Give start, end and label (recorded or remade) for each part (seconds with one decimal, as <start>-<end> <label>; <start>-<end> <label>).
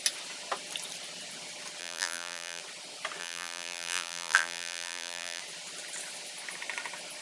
0.0-1.8 recorded; 1.8-2.6 remade; 2.6-3.2 recorded; 3.2-5.4 remade; 5.4-7.2 recorded